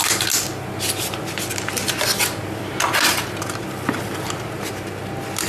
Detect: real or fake real